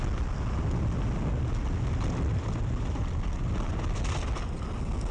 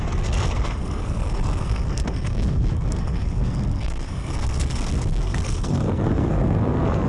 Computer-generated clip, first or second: second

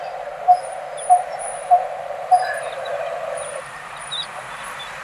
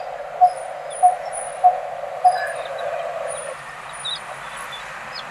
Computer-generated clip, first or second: first